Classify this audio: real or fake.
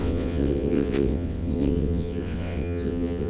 fake